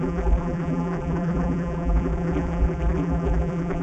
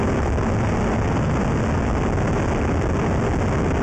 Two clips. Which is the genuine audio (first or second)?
second